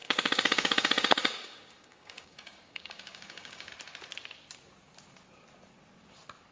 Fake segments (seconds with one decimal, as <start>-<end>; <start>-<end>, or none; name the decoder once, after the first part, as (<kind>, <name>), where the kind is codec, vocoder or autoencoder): 0.0-3.7 (codec, DAC)